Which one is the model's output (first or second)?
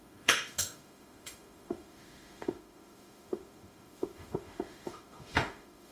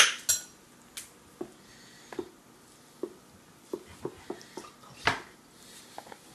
first